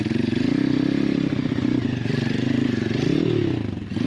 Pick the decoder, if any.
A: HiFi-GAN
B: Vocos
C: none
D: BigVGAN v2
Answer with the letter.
C